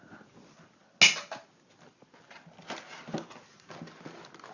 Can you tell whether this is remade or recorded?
recorded